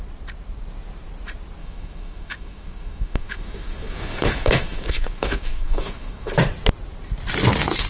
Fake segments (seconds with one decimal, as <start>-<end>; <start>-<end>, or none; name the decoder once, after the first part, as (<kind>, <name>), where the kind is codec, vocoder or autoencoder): 1.6-6.3 (autoencoder, DAC-VAE)